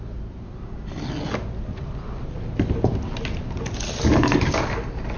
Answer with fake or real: real